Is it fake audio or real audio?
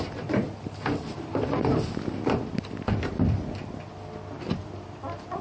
real